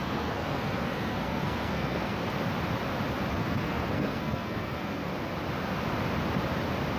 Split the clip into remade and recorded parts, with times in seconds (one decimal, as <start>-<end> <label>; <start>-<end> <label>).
0.0-2.2 remade; 2.2-3.3 recorded; 3.3-5.1 remade; 5.1-7.0 recorded